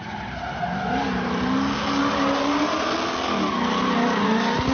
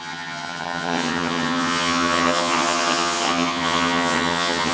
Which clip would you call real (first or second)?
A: first